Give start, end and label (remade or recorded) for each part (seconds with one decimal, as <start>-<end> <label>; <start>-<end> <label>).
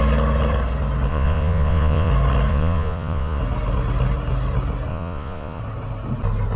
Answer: 0.0-1.1 recorded; 1.1-2.1 remade; 2.1-2.5 recorded; 2.5-3.4 remade; 3.4-4.9 recorded; 4.9-5.6 remade; 5.6-6.6 recorded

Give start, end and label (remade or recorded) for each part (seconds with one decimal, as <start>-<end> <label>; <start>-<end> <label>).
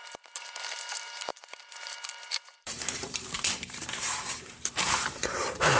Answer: 0.0-5.8 remade